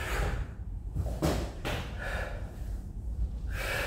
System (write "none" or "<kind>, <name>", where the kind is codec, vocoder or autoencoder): vocoder, BigVGAN v2